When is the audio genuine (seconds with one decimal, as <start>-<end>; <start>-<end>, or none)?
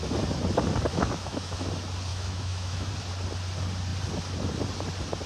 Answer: 0.0-0.9; 1.7-2.1; 2.9-5.3